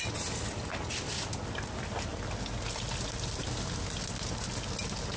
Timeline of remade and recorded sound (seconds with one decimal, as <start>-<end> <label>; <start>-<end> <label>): 0.0-5.2 recorded